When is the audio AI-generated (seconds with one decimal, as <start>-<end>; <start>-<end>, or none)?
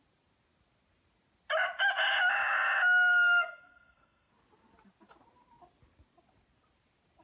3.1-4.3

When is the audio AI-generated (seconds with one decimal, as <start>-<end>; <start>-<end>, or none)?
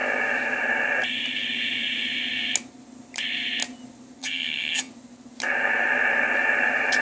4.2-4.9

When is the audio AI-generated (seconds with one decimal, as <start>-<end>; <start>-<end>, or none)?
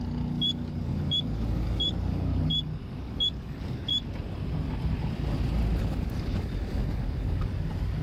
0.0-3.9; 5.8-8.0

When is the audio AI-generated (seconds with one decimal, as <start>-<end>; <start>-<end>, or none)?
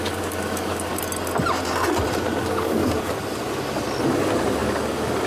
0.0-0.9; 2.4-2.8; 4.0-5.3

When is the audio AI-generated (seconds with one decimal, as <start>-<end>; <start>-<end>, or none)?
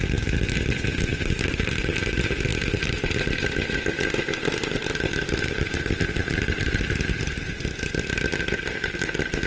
1.1-1.9; 2.5-3.2; 4.6-7.5